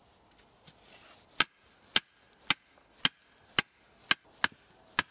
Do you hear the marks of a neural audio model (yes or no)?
no